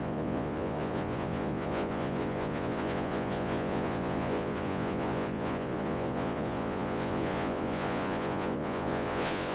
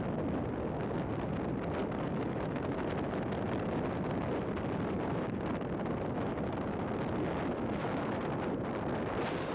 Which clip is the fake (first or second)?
first